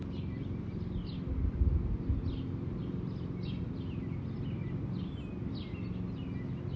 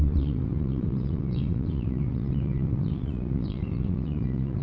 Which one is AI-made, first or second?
second